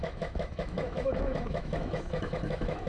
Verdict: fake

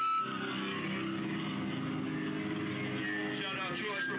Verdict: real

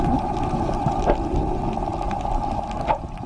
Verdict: real